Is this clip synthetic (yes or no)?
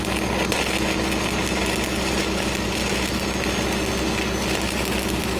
no